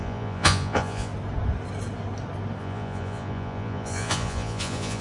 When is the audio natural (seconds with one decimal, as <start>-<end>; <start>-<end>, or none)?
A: 1.1-2.6